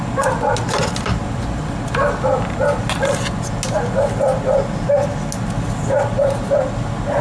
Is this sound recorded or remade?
recorded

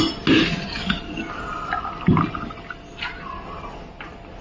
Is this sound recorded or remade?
recorded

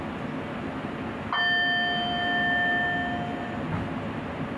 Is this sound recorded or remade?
recorded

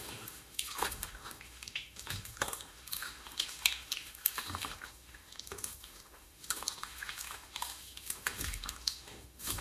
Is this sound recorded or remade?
remade